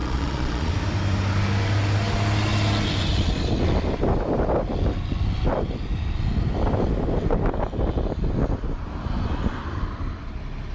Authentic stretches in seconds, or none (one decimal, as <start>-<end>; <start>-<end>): 0.7-10.7